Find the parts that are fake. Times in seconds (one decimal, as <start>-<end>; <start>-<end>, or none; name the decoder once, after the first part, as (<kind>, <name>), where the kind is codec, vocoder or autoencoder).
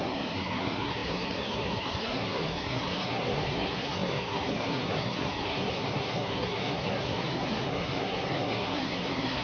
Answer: 0.0-9.4 (codec, SNAC)